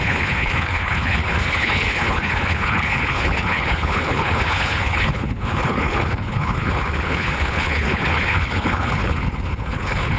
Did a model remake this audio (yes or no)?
yes